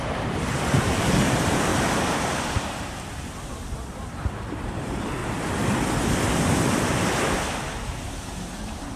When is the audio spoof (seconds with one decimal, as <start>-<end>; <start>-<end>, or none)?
0.0-1.7; 2.2-5.2; 8.1-9.0